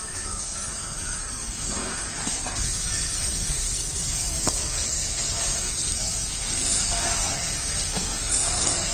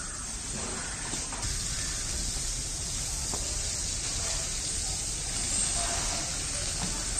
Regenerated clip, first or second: first